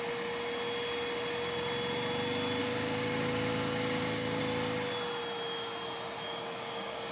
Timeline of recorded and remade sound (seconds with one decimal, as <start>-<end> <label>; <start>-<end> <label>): 0.0-2.6 recorded; 2.6-4.4 remade; 4.4-6.3 recorded; 6.3-7.1 remade